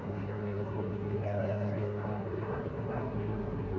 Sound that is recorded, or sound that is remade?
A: remade